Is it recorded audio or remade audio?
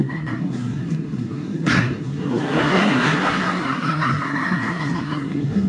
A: remade